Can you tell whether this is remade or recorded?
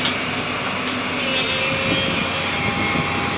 recorded